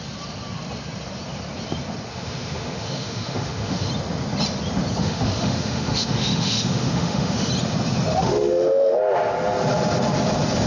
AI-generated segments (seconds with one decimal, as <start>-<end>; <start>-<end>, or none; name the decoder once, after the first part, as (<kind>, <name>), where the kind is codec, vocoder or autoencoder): 2.1-3.9 (autoencoder, DAC-VAE); 5.0-7.5; 8.1-9.0